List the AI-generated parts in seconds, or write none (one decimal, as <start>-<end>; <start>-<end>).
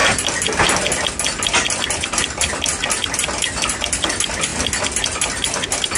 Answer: none